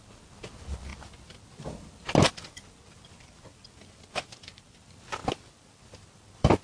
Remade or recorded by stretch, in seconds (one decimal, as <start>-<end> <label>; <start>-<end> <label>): 0.0-6.6 recorded